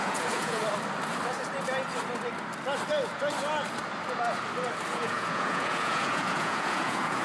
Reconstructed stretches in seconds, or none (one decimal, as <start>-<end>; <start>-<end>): 0.0-0.6; 4.9-7.2